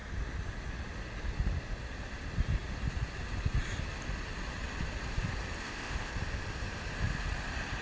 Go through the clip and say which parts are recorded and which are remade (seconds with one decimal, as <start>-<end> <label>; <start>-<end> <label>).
0.0-5.6 recorded; 5.6-6.1 remade; 6.1-7.8 recorded